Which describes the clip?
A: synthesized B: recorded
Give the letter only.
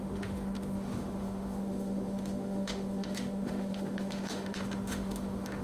A